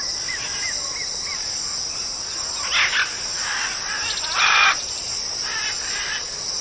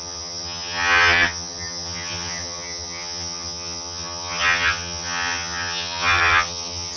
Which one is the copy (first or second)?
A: second